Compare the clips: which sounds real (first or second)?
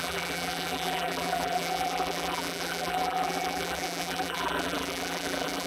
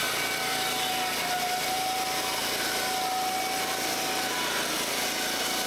second